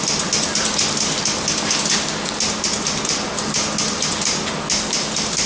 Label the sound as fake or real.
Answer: real